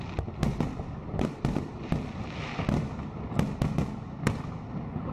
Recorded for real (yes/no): yes